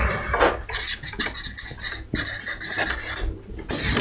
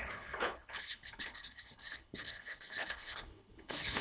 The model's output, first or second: second